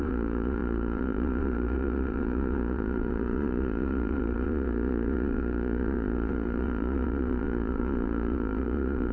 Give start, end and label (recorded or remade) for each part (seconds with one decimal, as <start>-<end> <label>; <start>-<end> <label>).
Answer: 0.0-9.1 remade